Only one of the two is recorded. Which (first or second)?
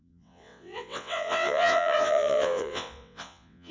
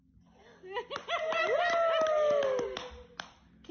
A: second